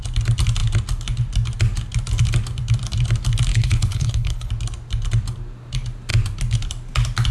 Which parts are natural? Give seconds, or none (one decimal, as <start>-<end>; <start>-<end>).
0.0-3.5; 4.5-7.3

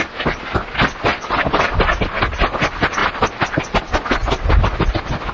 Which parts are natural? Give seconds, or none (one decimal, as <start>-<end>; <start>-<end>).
0.0-5.3

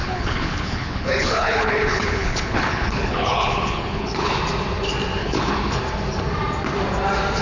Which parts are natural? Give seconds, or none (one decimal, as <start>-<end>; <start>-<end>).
4.4-5.2; 5.7-7.4

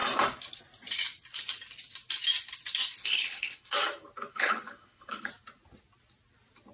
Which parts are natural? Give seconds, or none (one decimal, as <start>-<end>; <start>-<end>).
0.0-3.0; 3.7-4.3; 5.3-6.7